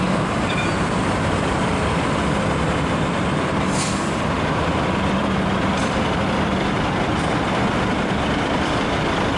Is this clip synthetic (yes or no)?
yes